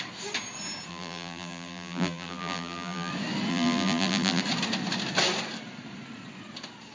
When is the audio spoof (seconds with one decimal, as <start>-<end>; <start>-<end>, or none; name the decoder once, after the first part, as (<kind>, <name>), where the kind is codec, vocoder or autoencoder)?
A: 0.9-3.1 (vocoder, BigVGAN v2); 3.5-4.4